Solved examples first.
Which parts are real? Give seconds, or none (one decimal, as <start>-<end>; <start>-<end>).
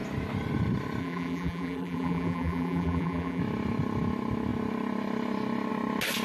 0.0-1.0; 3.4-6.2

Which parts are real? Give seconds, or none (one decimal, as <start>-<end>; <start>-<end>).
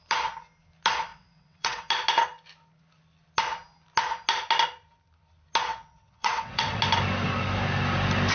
0.0-1.1; 1.8-5.7; 6.8-8.3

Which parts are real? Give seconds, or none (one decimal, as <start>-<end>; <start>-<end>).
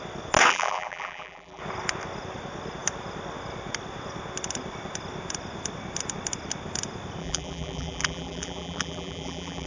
0.0-0.5; 1.6-7.2